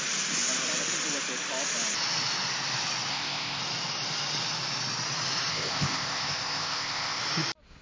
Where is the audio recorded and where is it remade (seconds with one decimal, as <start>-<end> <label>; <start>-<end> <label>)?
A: 0.0-3.1 recorded; 3.1-3.6 remade; 3.6-5.5 recorded; 5.5-7.2 remade; 7.2-7.8 recorded